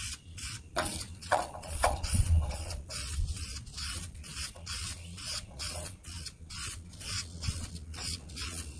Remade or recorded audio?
remade